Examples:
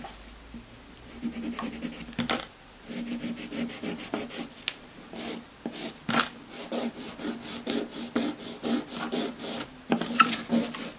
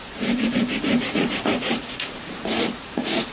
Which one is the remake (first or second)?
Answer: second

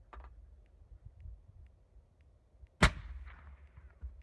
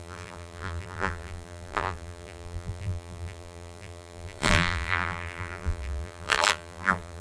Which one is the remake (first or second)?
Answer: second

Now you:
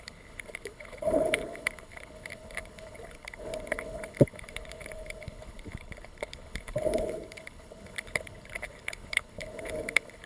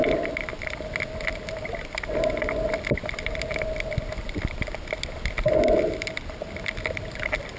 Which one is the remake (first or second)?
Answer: first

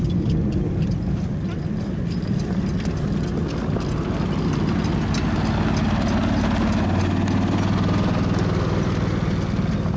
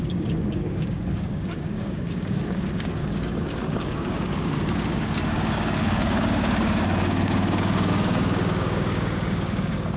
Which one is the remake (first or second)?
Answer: second